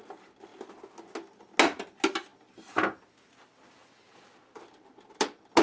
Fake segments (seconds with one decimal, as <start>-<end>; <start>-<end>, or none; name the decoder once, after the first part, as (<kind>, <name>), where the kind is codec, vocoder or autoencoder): none